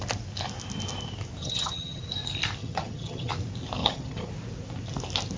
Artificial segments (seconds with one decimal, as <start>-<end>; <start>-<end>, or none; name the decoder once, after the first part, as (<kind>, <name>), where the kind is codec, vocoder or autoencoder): 1.4-2.0 (vocoder, HiFi-GAN); 2.6-3.3; 3.8-4.3